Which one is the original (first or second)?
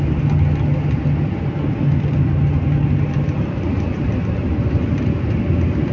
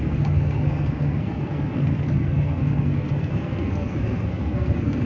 first